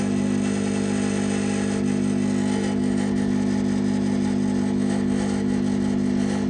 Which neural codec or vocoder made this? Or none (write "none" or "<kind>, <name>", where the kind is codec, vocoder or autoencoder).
none